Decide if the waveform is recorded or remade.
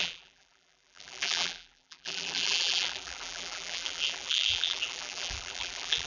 remade